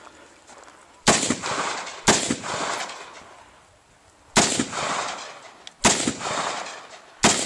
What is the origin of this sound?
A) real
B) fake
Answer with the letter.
A